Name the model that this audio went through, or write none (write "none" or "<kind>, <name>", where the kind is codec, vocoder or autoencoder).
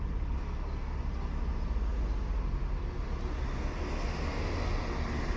none